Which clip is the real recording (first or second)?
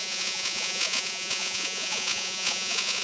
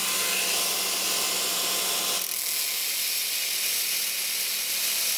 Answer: second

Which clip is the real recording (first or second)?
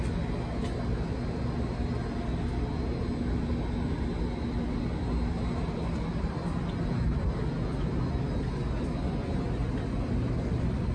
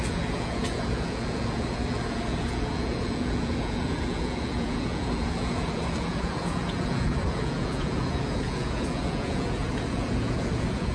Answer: first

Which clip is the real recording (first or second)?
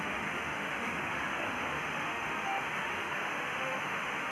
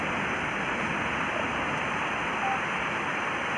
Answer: second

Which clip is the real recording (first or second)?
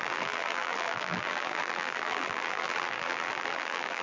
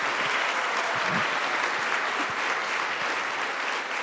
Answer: second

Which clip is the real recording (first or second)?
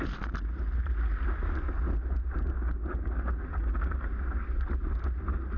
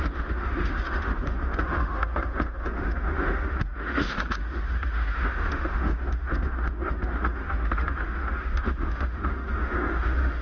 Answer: first